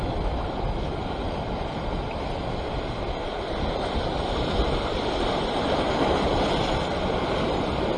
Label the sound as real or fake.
fake